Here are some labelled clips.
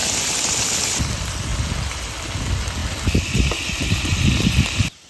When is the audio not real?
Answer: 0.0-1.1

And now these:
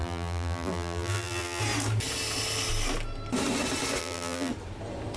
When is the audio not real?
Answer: 0.0-1.6; 4.0-4.5

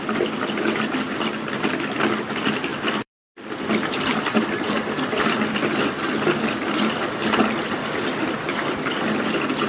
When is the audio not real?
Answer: 2.7-6.5; 7.2-8.6

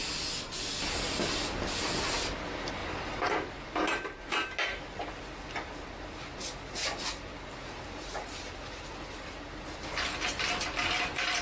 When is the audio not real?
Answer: 2.8-4.8

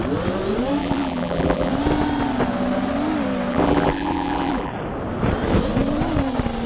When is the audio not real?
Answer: 0.8-1.7; 3.5-4.7

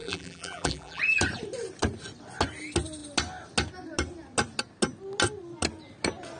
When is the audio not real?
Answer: 0.0-1.0

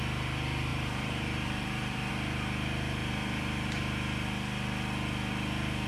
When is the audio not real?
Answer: 0.7-2.1; 3.0-3.8